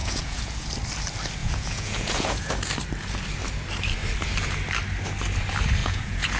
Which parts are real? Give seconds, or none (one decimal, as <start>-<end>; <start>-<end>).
0.7-1.4; 2.5-5.8

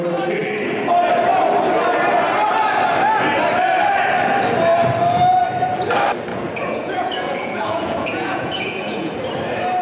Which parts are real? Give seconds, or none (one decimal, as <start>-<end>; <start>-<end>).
0.0-6.3; 9.1-9.8

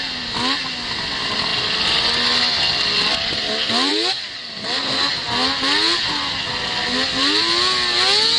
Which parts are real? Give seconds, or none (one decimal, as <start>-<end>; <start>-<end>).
0.0-8.4

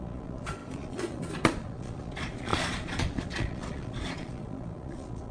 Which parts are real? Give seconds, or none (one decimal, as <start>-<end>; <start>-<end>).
none

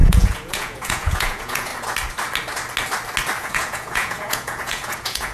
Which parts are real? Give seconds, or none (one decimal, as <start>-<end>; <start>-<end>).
1.7-3.4

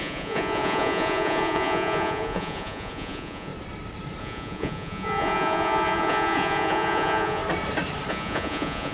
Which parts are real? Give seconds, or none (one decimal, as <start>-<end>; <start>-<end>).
3.5-4.2; 7.4-8.1

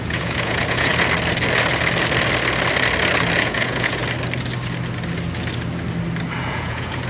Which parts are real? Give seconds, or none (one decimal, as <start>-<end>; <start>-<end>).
0.9-3.4; 4.0-6.4